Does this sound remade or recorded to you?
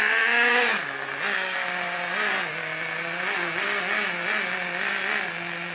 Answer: recorded